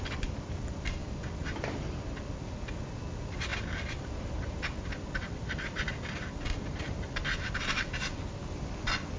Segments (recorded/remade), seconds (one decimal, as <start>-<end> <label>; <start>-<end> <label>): 0.0-9.2 recorded